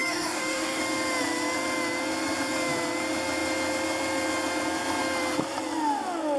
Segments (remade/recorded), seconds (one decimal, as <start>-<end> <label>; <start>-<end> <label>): 0.0-0.8 remade; 0.8-6.4 recorded